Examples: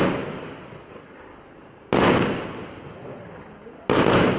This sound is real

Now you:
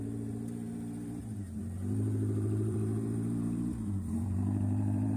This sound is fake